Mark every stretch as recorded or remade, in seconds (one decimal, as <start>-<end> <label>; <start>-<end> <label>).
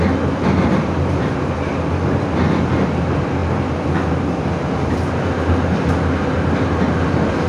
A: 0.0-7.5 recorded